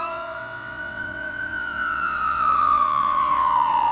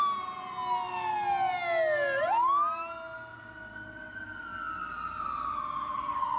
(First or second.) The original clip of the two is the second